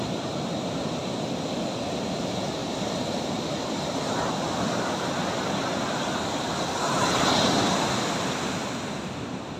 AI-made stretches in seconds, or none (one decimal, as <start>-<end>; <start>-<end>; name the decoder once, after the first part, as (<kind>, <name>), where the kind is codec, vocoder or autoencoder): none